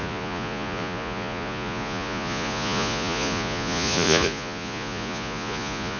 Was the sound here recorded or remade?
remade